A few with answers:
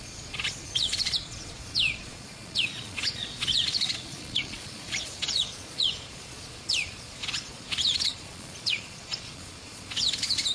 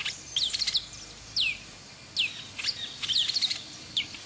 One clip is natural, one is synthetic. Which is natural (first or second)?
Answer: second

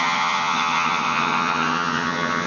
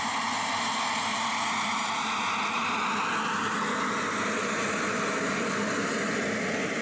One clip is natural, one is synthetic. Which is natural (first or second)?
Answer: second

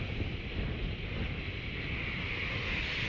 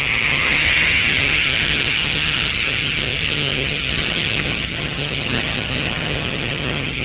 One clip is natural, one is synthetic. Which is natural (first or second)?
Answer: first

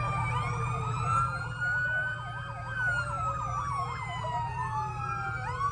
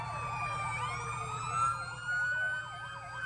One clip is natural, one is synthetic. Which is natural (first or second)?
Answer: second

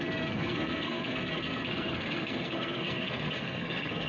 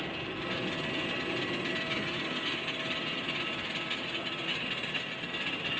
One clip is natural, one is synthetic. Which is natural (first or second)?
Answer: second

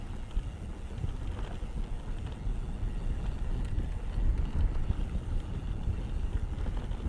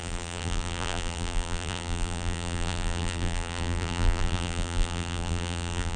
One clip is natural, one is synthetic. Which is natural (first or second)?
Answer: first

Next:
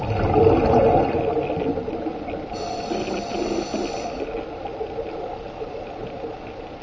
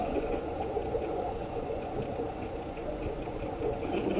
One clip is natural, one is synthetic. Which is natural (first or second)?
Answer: first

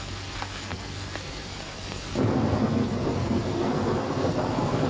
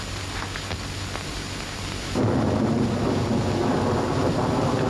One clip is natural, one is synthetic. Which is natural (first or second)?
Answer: second